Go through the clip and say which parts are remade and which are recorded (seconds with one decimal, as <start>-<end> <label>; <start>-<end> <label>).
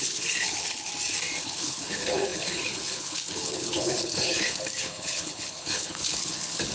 0.0-0.9 remade; 0.9-1.4 recorded; 1.4-6.7 remade